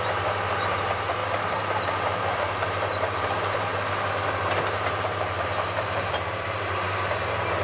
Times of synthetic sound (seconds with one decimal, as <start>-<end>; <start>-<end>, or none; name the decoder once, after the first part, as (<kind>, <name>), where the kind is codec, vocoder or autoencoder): 0.0-3.7 (vocoder, BigVGAN v2); 5.2-7.6